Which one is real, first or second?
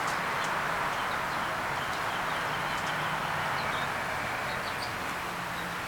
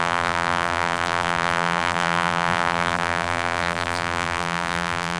first